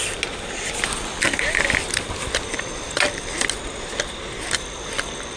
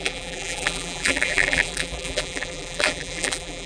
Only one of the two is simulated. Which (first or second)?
second